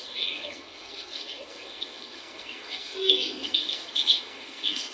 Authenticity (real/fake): fake